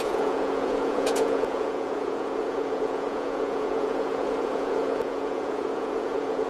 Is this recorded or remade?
remade